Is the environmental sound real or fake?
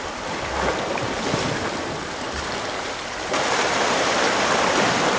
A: fake